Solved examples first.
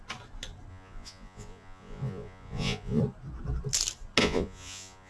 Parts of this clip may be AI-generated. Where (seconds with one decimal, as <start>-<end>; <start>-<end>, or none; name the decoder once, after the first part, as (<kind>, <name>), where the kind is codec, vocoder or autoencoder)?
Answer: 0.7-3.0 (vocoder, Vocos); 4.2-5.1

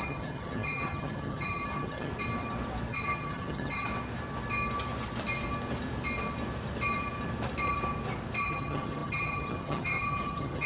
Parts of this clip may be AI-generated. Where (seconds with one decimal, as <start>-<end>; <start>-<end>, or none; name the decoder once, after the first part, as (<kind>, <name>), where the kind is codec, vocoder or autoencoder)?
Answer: 0.0-2.1 (vocoder, HiFi-GAN); 2.9-3.9; 8.4-10.7

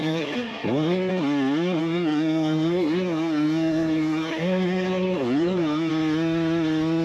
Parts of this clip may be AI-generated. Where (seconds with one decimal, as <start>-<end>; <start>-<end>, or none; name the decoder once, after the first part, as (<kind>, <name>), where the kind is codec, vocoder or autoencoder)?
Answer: 0.0-1.1 (codec, SNAC); 1.8-5.9

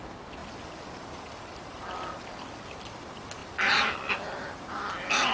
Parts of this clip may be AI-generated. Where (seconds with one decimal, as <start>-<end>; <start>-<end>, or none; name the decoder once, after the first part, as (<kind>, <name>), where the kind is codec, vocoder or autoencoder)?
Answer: none

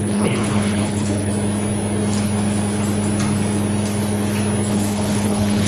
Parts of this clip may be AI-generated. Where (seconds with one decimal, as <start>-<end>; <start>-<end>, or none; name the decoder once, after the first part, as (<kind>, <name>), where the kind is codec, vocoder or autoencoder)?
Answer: 0.0-1.3 (codec, HILCodec); 4.7-5.7